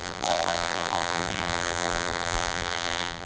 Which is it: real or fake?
fake